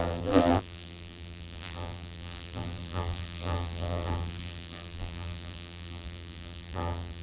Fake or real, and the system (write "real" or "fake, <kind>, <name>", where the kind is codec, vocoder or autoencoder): fake, vocoder, BigVGAN v2